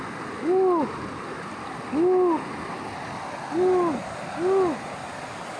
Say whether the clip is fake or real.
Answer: real